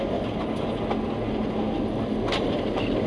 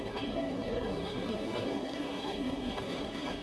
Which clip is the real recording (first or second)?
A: first